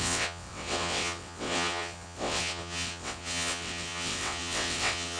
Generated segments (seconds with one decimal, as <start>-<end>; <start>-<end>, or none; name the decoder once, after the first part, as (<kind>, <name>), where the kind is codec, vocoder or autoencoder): 0.0-5.2 (vocoder, WaveNeXt)